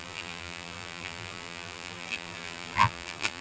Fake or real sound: fake